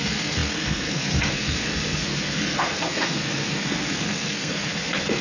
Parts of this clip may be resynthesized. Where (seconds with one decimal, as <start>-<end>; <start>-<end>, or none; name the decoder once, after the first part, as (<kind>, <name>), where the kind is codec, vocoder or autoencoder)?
0.0-5.2 (codec, SNAC)